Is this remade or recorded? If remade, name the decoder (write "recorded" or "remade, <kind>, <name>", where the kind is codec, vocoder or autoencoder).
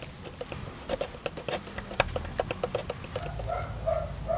recorded